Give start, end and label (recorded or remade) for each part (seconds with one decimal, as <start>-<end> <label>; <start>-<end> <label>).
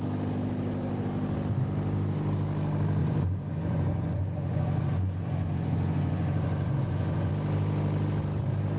0.0-3.0 recorded; 3.0-7.3 remade; 7.3-8.8 recorded